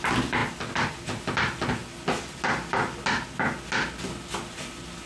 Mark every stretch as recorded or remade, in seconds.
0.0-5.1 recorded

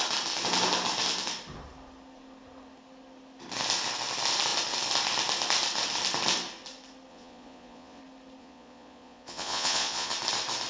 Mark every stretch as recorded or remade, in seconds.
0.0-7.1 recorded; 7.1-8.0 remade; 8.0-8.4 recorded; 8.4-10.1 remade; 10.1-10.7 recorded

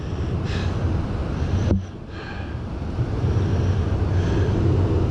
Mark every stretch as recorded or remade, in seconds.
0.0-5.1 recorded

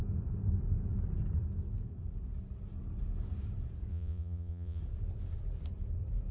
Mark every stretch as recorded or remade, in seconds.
0.0-3.9 recorded; 3.9-4.8 remade; 4.8-6.3 recorded